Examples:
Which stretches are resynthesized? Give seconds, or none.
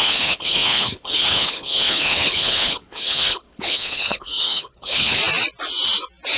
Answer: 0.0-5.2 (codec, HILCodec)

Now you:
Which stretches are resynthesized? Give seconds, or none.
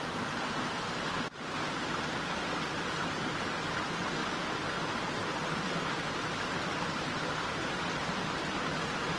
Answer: none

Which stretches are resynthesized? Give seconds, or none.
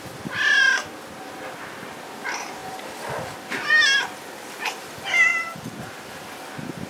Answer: none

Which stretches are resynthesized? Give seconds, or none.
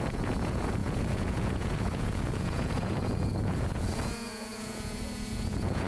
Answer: 0.0-5.9 (vocoder, Vocos)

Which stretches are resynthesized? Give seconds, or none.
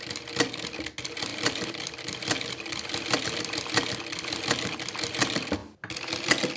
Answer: none